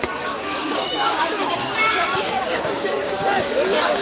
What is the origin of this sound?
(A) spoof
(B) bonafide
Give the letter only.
A